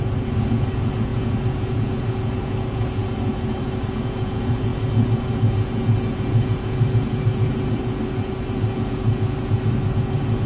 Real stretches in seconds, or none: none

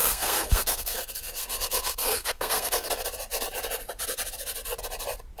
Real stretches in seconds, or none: 2.9-5.4

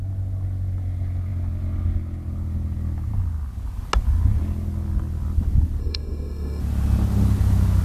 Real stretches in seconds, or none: 0.0-5.8; 6.6-7.8

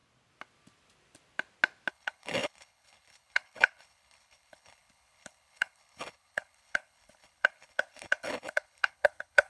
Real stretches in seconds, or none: 0.0-1.9

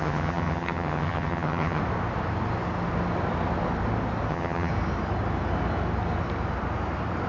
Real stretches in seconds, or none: 1.8-4.3; 4.7-7.3

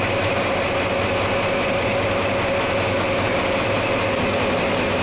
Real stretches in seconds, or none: 0.0-5.0